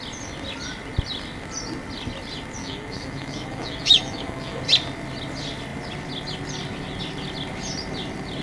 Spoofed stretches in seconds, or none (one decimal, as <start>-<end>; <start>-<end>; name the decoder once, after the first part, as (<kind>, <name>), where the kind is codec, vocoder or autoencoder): 2.6-4.6 (autoencoder, DAC-VAE)